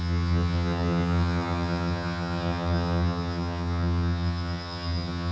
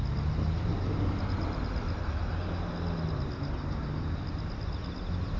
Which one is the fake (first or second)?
first